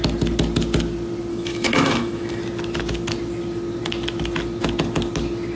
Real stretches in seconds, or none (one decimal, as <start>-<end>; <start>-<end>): 0.0-1.3; 2.4-5.6